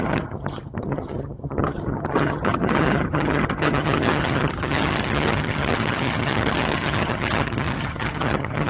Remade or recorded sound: remade